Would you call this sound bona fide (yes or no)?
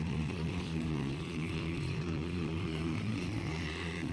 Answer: no